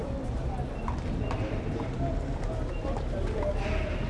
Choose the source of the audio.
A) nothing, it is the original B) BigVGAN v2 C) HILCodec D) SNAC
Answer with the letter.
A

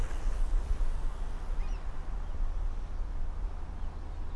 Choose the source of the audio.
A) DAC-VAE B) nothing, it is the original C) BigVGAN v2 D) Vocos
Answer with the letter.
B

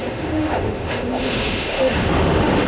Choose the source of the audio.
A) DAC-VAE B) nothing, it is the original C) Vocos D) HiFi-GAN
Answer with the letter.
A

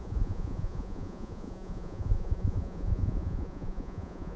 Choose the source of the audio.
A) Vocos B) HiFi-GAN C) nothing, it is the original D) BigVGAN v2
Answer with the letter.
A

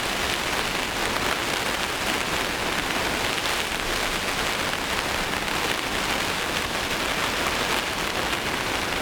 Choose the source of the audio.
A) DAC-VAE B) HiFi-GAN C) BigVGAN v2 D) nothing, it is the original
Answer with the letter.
D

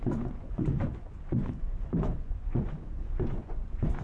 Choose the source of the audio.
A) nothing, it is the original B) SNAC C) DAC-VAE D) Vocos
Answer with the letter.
D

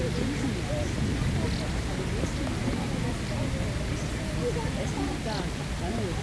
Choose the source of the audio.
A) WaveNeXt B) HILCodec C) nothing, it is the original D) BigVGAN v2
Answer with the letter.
C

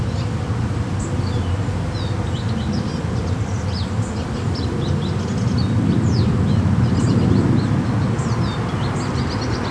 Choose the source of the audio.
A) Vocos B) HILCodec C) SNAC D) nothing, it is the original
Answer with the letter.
D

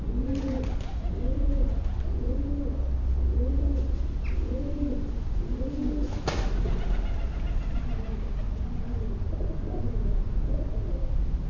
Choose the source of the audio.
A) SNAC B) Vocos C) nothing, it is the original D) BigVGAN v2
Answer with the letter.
C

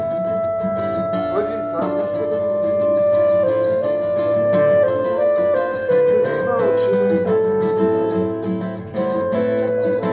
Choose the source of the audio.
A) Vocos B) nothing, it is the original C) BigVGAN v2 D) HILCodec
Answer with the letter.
B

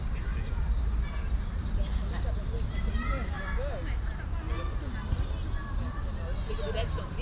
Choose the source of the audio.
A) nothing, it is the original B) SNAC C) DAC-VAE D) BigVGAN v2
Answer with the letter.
A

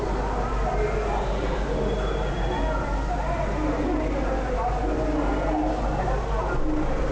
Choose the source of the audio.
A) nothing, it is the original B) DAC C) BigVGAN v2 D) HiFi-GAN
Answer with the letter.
A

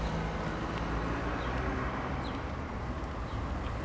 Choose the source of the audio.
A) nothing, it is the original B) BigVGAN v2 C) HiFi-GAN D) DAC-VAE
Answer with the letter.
A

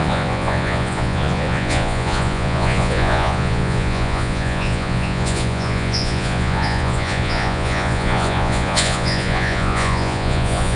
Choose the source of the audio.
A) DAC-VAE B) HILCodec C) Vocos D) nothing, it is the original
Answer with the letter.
C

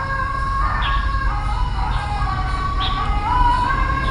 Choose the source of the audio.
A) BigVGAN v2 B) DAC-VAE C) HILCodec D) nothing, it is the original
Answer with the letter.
D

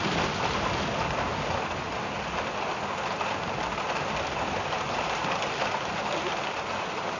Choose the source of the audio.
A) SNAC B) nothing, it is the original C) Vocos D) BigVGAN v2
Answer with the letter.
B